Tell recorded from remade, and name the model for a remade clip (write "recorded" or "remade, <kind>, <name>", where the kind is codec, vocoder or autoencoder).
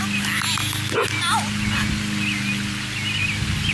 recorded